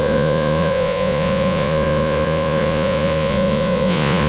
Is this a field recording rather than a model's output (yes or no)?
no